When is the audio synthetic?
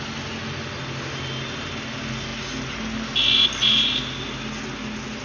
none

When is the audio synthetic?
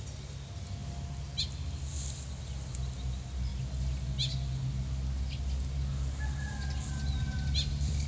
none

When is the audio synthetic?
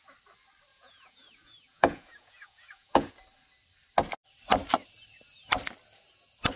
0.7-3.1 (vocoder, Vocos)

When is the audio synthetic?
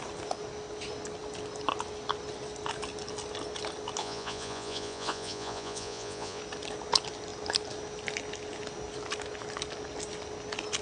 4.0-6.4 (vocoder, Vocos)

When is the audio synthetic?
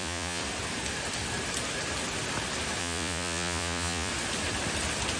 0.0-0.4 (vocoder, Vocos); 2.8-4.1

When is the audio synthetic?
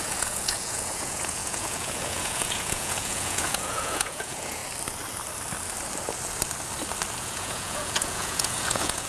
0.0-4.6 (vocoder, Vocos); 7.2-9.1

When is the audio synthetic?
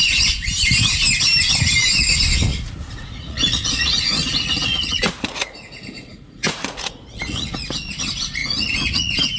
2.5-7.7 (vocoder, Vocos); 8.4-9.4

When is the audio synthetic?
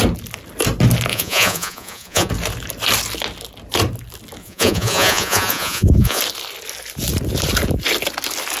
1.1-2.3 (vocoder, Vocos); 4.4-6.2